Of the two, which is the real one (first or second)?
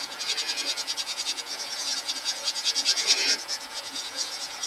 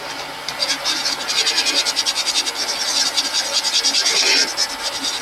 second